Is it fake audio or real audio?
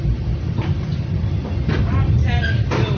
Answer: fake